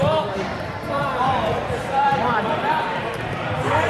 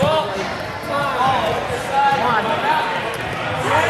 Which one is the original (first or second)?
second